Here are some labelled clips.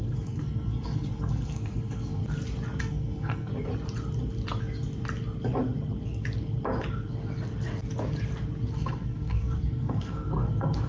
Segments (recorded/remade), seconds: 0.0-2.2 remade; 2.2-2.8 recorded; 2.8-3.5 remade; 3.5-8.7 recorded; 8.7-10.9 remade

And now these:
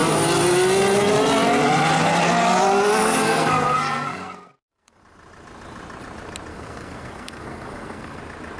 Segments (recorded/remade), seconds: 0.0-3.0 recorded; 3.0-5.0 remade; 5.0-6.5 recorded; 6.5-8.2 remade; 8.2-8.6 recorded

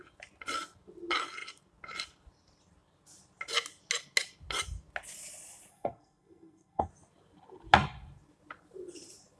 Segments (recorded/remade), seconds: 0.0-5.7 recorded; 5.7-6.9 remade; 6.9-9.4 recorded

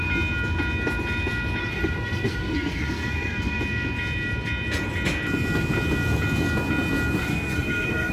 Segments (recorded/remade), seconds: 0.0-1.6 recorded; 1.6-3.6 remade; 3.6-7.2 recorded; 7.2-8.1 remade